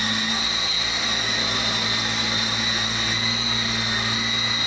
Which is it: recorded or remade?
recorded